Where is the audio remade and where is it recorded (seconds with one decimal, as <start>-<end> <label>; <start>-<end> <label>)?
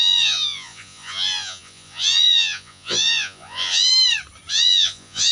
0.0-3.9 remade; 3.9-4.5 recorded; 4.5-5.3 remade